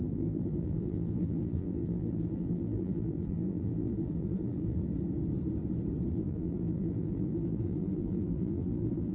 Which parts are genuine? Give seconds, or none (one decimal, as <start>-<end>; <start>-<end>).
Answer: 4.8-6.1